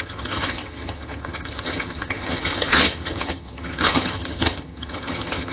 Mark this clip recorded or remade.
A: remade